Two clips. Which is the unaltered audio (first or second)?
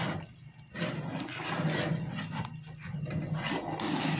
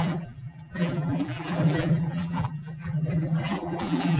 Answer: first